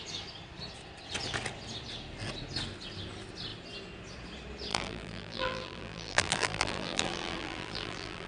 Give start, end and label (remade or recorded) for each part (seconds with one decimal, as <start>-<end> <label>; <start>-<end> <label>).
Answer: 0.0-4.7 recorded; 4.7-8.3 remade